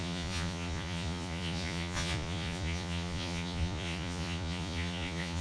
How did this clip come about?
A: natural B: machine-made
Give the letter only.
B